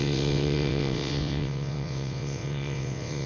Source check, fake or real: fake